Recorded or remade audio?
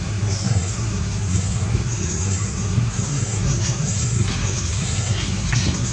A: remade